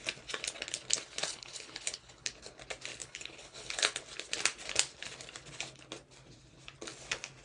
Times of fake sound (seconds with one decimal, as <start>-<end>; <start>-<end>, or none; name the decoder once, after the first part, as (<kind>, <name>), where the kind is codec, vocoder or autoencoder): 1.3-2.3 (codec, HILCodec); 3.0-4.0